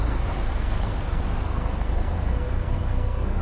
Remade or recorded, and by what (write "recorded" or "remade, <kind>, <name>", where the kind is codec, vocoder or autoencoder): remade, codec, SNAC